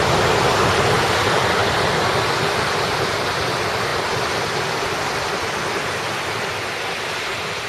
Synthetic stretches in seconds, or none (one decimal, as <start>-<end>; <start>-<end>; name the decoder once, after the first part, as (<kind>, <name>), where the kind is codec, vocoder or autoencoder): none